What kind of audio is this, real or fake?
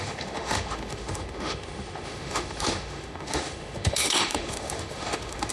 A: fake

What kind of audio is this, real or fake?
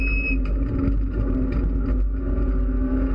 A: real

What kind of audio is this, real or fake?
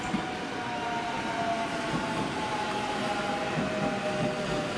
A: real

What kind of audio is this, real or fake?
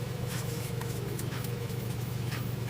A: fake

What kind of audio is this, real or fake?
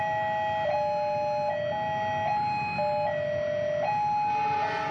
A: real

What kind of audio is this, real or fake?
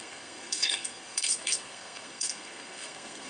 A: fake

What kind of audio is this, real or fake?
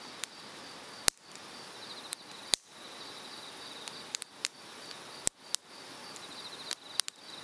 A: real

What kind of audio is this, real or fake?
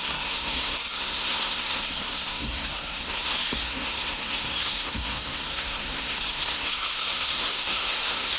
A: fake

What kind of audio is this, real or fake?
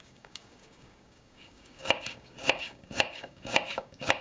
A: fake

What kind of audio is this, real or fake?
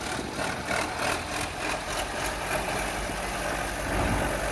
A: real